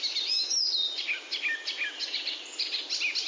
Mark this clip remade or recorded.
recorded